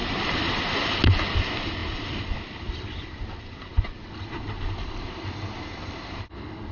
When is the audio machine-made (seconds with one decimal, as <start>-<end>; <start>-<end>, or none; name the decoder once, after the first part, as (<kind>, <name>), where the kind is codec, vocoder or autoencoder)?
none